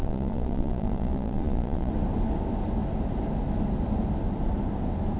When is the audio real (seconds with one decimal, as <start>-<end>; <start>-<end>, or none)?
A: 1.9-5.2

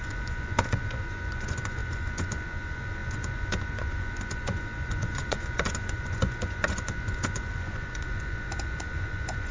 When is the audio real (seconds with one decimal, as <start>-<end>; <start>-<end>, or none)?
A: none